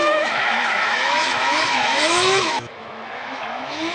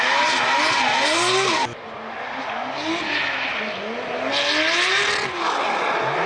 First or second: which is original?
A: second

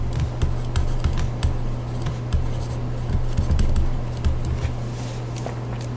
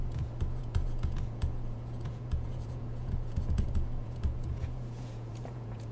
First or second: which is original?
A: first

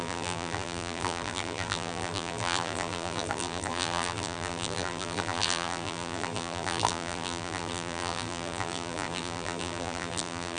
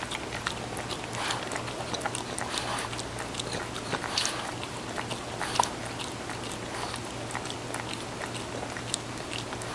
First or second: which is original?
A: second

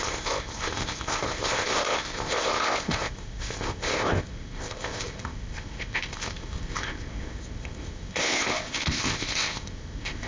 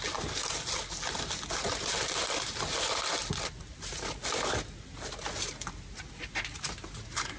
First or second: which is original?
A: second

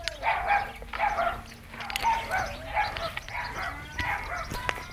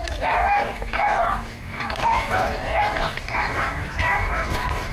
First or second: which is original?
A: first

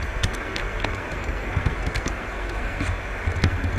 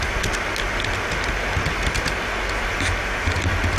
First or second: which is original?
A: second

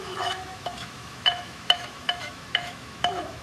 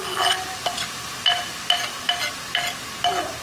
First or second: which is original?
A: second